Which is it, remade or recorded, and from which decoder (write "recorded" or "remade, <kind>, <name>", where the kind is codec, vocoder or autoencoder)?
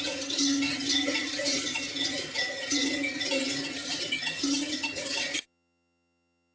remade, vocoder, HiFi-GAN